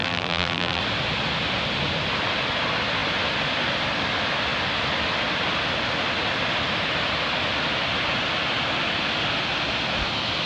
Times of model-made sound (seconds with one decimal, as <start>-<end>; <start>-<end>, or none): 0.0-0.8